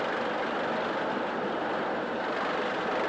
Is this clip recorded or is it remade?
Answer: recorded